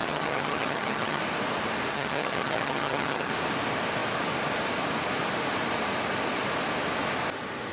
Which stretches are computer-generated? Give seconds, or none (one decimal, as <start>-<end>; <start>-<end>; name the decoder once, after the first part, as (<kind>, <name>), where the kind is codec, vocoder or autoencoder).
0.0-1.2 (vocoder, HiFi-GAN); 1.9-3.3